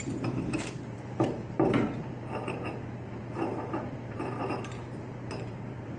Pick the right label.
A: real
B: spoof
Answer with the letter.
B